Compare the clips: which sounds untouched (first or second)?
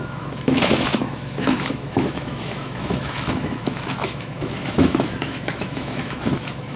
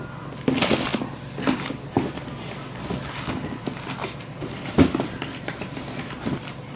second